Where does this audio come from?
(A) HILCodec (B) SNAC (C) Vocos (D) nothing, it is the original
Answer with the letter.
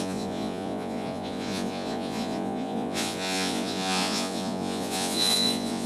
C